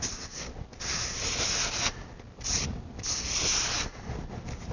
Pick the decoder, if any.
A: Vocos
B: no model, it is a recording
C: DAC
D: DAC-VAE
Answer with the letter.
B